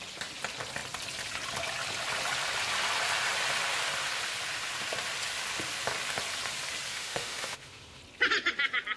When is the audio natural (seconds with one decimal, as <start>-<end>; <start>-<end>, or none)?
0.0-6.9; 8.0-9.0